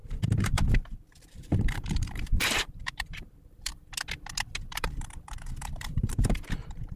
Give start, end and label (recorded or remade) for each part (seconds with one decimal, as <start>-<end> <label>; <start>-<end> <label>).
0.0-3.7 remade; 3.7-4.7 recorded; 4.7-7.0 remade